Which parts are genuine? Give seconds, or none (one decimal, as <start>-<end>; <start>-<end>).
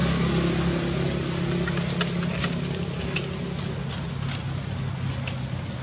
0.0-5.8